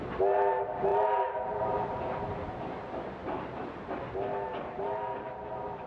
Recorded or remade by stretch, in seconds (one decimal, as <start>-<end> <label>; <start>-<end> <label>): 0.0-0.9 recorded; 0.9-2.3 remade; 2.3-5.9 recorded